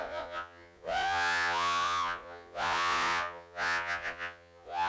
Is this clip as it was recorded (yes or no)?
no